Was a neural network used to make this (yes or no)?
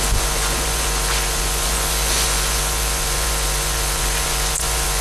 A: yes